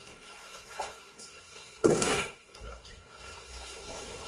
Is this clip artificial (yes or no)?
yes